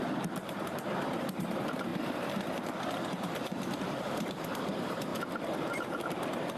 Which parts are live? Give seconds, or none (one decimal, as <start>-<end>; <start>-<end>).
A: 1.9-2.9; 5.1-5.6